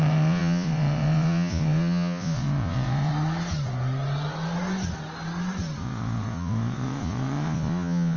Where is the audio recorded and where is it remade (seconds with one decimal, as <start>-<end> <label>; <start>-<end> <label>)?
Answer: 0.0-3.1 remade; 3.1-5.8 recorded; 5.8-8.2 remade